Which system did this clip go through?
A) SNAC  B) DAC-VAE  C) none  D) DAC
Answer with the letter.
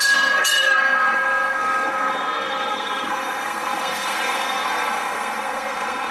A